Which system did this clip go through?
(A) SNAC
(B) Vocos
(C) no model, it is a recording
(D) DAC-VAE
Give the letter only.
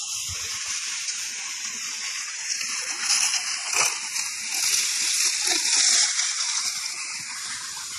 C